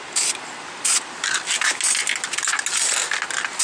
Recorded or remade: recorded